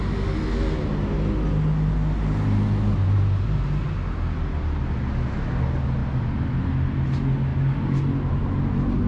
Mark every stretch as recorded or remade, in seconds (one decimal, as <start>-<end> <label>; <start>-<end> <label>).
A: 0.0-6.0 recorded; 6.0-6.6 remade; 6.6-9.1 recorded